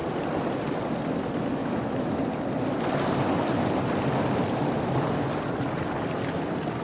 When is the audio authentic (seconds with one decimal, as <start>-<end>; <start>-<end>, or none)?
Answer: 0.0-1.6; 2.2-6.8